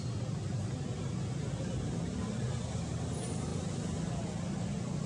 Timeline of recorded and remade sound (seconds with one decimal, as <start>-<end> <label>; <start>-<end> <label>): 0.0-5.1 recorded